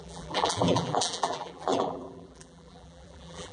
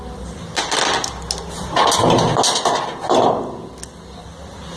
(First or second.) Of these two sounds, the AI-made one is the first